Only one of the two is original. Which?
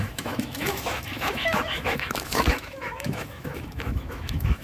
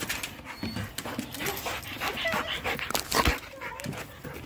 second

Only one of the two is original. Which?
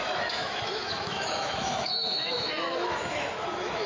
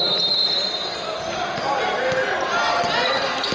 second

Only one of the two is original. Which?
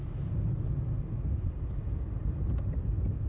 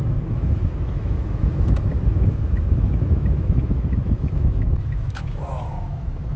first